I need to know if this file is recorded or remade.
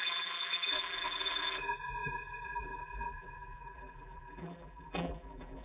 remade